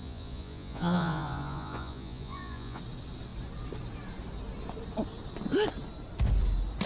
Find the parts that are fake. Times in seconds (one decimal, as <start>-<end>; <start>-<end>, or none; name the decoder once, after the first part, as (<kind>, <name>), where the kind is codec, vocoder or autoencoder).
0.0-2.8 (vocoder, Vocos)